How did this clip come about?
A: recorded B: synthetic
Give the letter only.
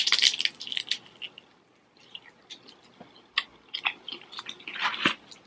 A